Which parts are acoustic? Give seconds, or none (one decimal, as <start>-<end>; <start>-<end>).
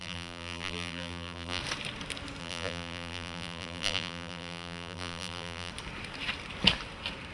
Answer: 1.6-2.4; 5.7-7.3